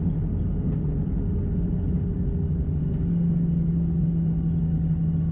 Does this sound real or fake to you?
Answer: real